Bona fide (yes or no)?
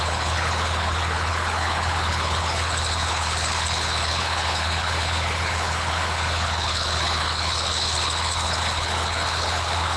no